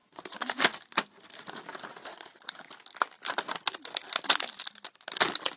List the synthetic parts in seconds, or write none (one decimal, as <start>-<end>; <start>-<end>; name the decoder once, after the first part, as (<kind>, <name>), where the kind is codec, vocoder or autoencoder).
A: 0.0-0.6 (vocoder, Vocos); 2.1-2.7